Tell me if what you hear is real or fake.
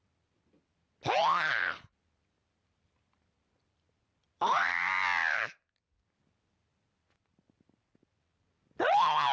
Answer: real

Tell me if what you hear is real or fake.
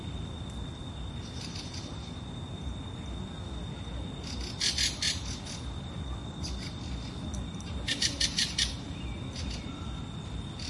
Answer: real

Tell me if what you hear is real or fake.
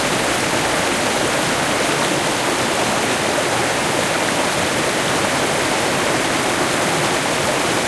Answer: real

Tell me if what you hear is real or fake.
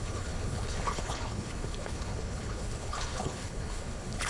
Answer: fake